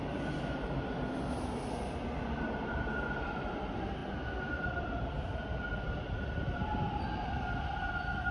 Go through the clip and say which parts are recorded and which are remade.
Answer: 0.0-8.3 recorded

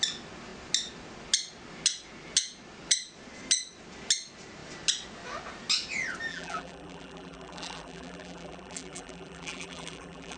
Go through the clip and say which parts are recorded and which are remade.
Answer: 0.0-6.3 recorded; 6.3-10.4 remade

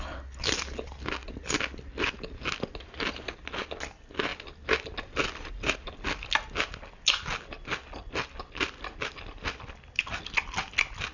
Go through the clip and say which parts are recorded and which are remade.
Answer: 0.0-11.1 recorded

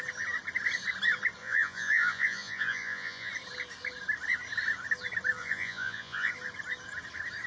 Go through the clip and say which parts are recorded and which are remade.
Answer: 0.0-1.4 recorded; 1.4-3.3 remade; 3.3-5.4 recorded; 5.4-6.3 remade; 6.3-7.5 recorded